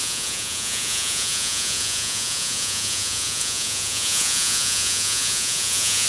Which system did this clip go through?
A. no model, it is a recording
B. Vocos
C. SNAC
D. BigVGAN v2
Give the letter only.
B